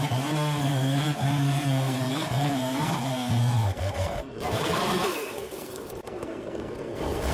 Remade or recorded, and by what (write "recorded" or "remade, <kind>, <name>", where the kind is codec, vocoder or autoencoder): remade, codec, SNAC